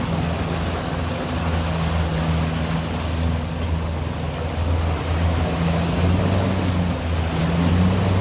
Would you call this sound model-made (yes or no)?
no